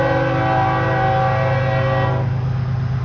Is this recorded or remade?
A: recorded